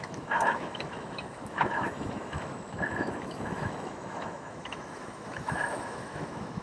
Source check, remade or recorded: remade